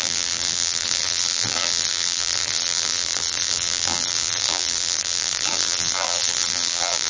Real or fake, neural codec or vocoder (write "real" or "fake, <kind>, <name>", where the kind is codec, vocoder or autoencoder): fake, vocoder, BigVGAN v2